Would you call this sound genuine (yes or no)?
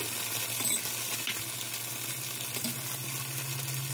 yes